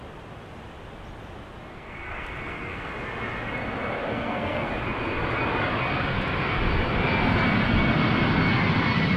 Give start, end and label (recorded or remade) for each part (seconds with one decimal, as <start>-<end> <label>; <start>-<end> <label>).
0.0-1.7 recorded; 1.7-2.9 remade; 2.9-4.1 recorded; 4.1-4.7 remade; 4.7-9.2 recorded